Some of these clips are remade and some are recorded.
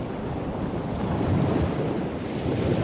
remade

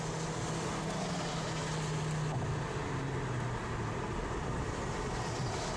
recorded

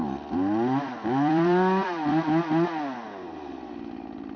remade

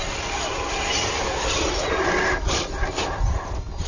recorded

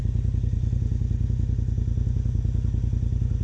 recorded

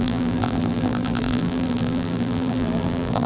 remade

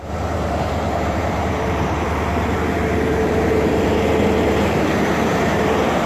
remade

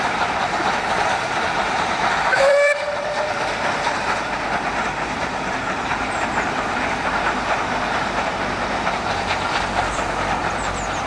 remade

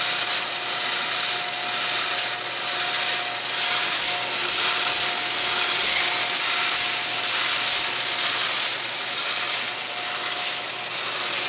recorded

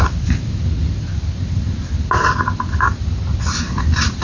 remade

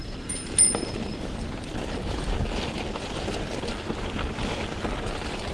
recorded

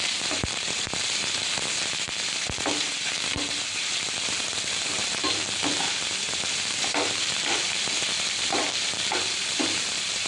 remade